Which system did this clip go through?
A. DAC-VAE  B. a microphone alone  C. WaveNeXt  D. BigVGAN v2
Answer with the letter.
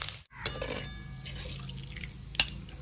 B